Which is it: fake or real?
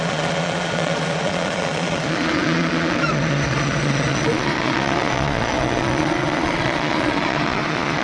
fake